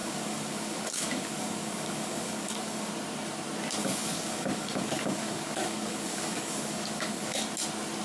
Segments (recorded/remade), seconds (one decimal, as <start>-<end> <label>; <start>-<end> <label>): 0.0-2.9 remade; 2.9-3.8 recorded; 3.8-7.4 remade; 7.4-8.0 recorded